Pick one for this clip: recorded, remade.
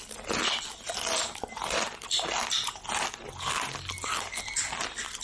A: recorded